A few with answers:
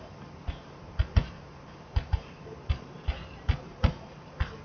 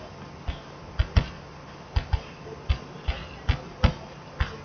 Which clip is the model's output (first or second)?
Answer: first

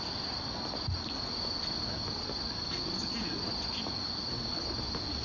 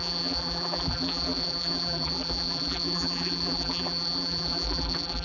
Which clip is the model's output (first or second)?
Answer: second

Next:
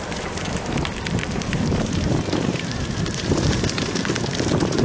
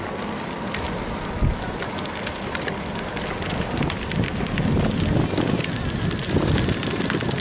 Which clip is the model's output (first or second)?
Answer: first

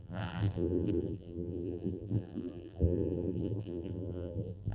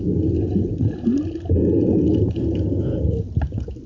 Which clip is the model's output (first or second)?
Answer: first